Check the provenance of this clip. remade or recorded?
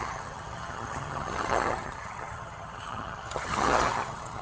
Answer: remade